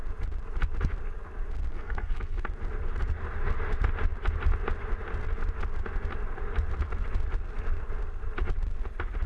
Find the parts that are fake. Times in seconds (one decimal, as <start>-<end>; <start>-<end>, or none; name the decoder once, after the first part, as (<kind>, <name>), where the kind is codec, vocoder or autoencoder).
1.7-2.4 (codec, SNAC)